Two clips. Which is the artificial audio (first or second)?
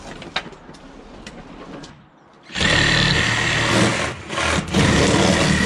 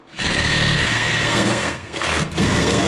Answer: second